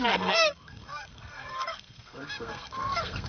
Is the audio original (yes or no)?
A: no